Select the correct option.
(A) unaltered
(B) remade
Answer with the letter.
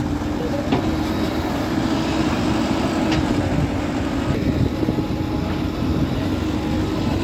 A